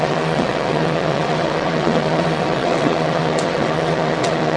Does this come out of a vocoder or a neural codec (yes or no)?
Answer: yes